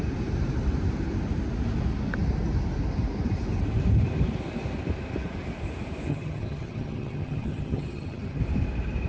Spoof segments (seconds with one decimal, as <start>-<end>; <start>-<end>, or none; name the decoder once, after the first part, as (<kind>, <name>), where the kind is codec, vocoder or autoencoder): 6.1-8.4 (vocoder, HiFi-GAN)